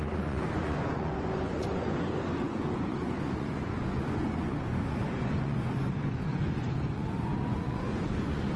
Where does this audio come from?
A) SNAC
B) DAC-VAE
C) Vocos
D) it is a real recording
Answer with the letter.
C